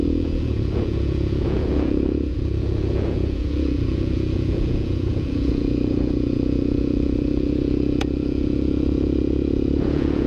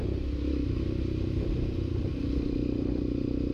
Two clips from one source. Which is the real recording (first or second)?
second